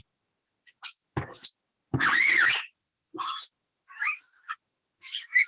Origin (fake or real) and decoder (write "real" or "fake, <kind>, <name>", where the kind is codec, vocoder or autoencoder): fake, autoencoder, DAC-VAE